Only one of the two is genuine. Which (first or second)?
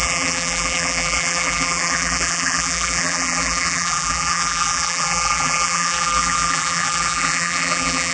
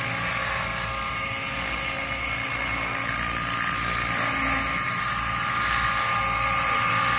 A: second